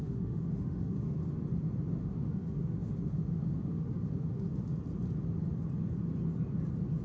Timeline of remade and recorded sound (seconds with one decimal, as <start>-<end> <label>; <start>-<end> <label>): 0.0-1.2 remade; 1.2-1.9 recorded; 1.9-4.5 remade; 4.5-7.0 recorded